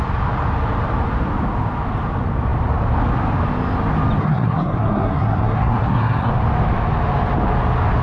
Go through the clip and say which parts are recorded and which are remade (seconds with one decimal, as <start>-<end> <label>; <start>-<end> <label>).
0.0-4.2 recorded; 4.2-6.3 remade; 6.3-8.0 recorded